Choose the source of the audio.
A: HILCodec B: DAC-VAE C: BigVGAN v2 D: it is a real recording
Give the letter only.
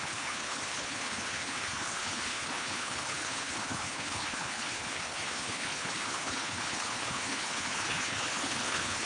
A